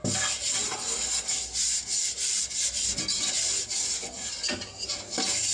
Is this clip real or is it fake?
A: real